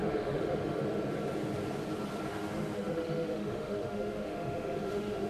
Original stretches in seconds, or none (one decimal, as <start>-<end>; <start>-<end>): 0.8-2.3